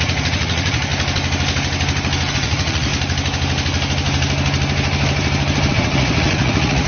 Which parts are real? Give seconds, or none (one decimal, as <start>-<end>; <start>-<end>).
0.9-2.3; 2.9-5.7